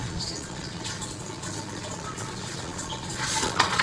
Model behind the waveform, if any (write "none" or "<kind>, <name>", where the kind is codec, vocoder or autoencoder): vocoder, Vocos